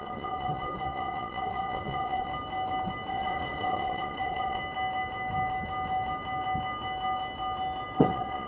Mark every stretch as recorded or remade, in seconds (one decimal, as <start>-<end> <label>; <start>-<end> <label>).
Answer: 0.0-2.3 remade; 2.3-3.1 recorded; 3.1-4.6 remade; 4.6-8.0 recorded; 8.0-8.5 remade